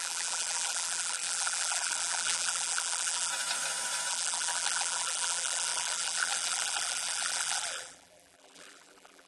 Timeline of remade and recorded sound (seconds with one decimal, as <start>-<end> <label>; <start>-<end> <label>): 0.0-3.3 remade; 3.3-4.1 recorded; 4.1-9.3 remade